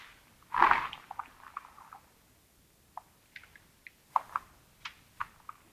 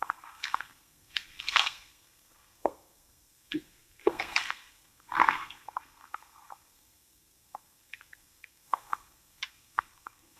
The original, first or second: first